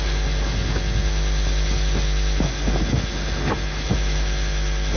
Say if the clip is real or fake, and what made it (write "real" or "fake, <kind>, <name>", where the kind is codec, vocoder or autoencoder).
real